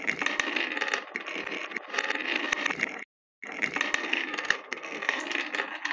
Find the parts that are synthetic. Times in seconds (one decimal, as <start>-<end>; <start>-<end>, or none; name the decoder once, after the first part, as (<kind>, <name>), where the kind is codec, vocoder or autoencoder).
4.0-5.2 (codec, SNAC)